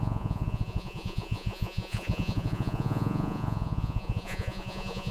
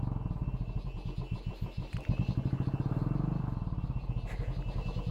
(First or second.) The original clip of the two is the second